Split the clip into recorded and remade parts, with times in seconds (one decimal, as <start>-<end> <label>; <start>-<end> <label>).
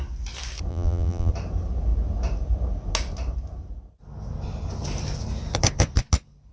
0.0-0.7 recorded; 0.7-1.3 remade; 1.3-6.5 recorded